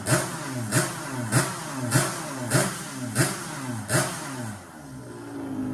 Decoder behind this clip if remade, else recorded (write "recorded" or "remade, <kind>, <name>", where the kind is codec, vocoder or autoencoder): recorded